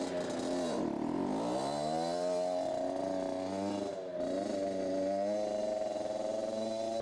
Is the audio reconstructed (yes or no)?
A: no